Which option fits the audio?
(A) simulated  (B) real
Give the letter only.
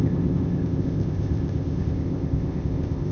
A